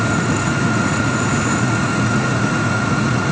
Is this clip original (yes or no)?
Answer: no